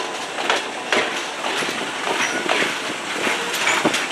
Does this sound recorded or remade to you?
recorded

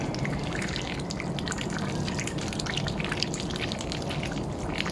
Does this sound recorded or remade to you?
recorded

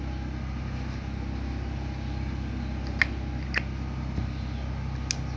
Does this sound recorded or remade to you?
recorded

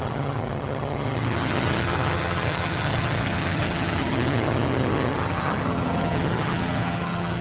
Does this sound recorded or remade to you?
remade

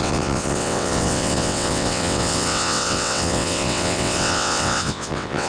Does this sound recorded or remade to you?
remade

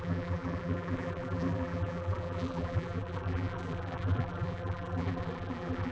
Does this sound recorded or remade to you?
remade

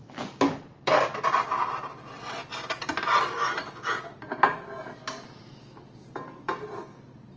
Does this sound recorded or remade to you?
recorded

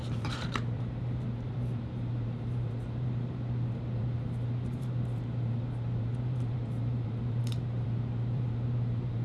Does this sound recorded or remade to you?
remade